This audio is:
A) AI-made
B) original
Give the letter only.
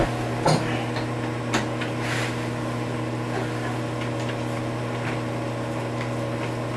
B